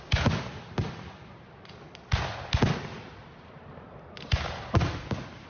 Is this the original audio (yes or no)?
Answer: yes